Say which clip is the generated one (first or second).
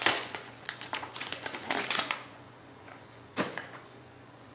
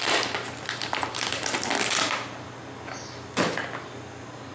first